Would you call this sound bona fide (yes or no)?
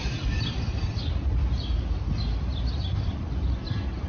yes